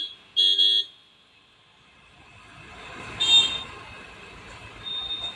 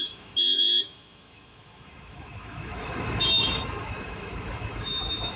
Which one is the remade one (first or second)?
second